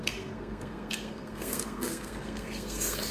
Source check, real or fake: fake